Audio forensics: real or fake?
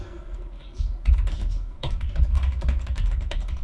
fake